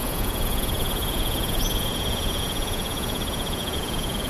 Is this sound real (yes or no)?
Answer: no